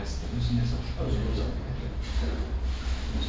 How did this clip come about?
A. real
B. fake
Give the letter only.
A